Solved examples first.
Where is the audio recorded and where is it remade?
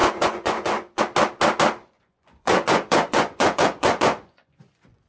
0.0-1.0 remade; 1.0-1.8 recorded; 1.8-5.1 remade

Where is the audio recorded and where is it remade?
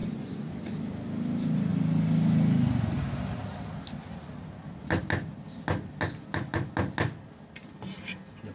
0.0-0.5 remade; 0.5-8.5 recorded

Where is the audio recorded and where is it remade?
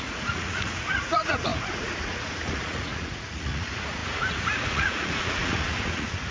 0.0-6.3 remade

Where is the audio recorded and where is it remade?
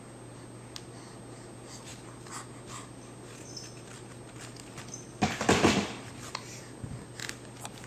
0.0-7.9 recorded